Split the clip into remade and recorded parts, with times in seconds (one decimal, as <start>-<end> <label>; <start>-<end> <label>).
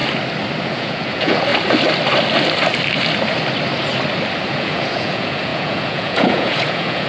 0.0-0.7 recorded; 0.7-1.5 remade; 1.5-4.5 recorded; 4.5-7.1 remade